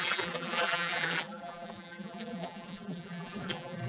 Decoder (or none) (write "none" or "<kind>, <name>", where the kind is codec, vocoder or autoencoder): vocoder, BigVGAN v2